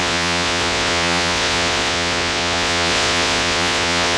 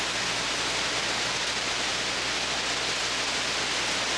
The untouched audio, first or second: second